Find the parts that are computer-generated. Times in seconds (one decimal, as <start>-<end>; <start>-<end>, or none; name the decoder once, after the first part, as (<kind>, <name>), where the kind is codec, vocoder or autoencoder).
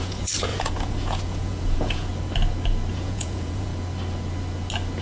0.0-2.1 (vocoder, Vocos); 2.9-3.7